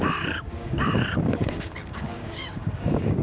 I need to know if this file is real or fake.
fake